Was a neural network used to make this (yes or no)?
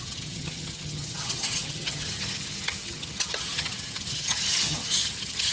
yes